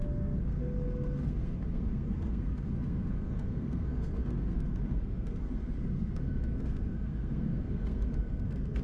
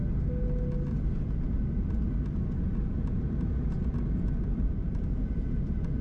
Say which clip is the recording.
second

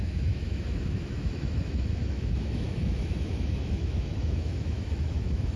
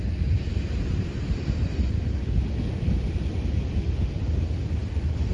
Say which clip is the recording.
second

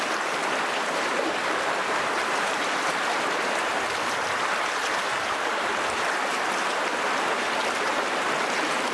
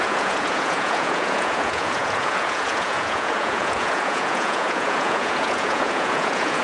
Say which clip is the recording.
first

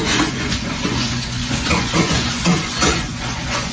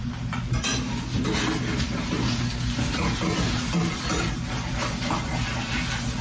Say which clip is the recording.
second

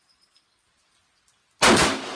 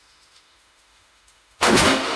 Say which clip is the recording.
first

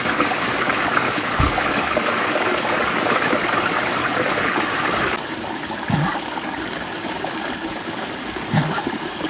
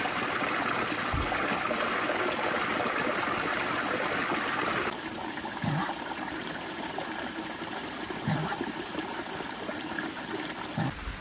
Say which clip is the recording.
second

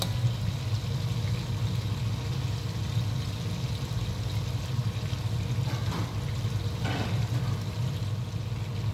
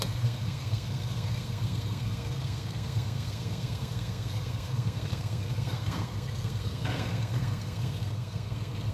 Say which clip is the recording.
first